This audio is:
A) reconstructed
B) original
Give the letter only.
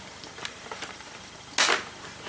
B